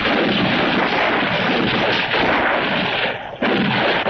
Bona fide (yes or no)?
yes